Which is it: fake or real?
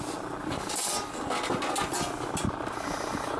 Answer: real